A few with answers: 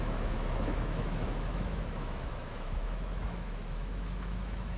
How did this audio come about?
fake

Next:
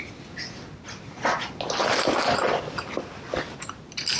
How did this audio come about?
real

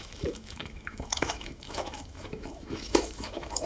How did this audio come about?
fake